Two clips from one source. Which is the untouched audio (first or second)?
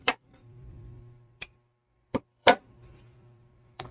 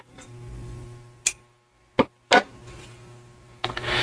second